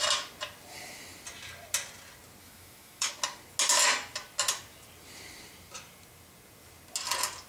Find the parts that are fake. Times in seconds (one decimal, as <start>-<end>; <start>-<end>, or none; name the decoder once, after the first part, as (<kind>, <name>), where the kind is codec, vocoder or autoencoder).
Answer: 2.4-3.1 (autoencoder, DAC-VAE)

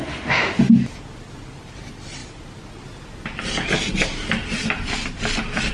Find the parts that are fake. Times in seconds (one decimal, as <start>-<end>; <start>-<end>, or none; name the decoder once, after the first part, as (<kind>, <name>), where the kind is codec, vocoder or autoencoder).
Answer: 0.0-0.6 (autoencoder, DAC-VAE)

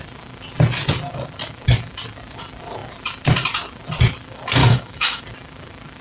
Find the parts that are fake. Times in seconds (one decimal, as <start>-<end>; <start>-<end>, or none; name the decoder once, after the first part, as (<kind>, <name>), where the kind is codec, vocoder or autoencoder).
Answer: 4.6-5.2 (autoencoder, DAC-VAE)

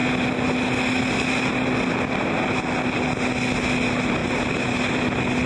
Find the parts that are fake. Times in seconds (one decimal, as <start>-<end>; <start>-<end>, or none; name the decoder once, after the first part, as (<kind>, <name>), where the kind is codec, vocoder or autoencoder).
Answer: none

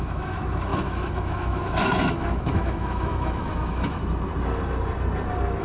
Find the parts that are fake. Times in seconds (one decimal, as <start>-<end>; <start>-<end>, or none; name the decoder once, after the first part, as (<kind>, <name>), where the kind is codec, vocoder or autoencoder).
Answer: 0.0-4.0 (autoencoder, DAC-VAE)

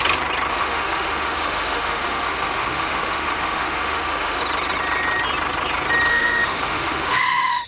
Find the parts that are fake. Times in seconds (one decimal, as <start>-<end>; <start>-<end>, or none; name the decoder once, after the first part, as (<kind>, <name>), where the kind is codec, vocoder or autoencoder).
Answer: 0.5-4.4 (autoencoder, DAC-VAE); 6.1-7.7